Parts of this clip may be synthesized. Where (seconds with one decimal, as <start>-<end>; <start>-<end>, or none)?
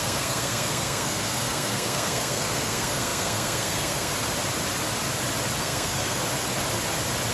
0.0-4.1; 5.6-6.2